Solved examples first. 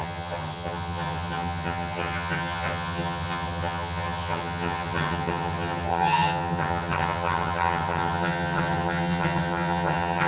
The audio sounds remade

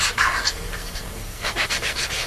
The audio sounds remade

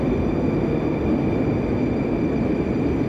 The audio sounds recorded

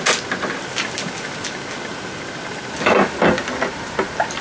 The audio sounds recorded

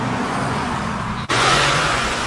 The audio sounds remade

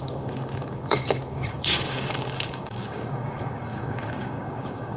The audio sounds remade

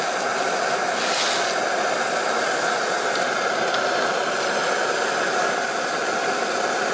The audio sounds recorded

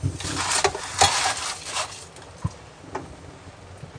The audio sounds recorded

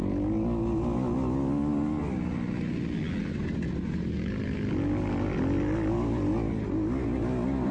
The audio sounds recorded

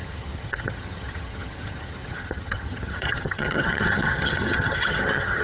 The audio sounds remade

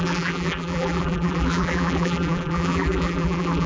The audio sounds remade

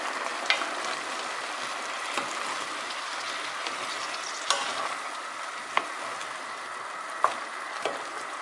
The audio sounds recorded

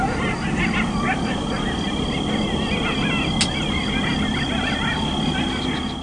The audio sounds recorded